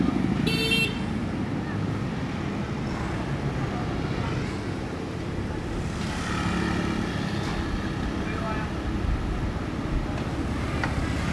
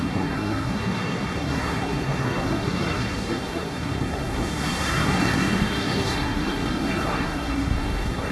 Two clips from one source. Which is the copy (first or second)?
second